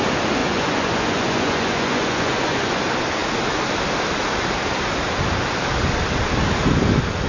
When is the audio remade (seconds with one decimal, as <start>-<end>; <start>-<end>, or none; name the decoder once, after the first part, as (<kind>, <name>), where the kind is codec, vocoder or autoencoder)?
0.4-2.8 (vocoder, Vocos)